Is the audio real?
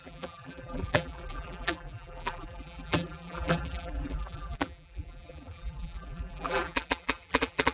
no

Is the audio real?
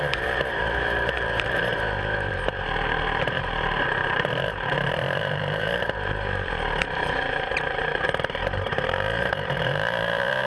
no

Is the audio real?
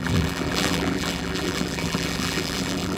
no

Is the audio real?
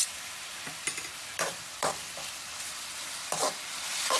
no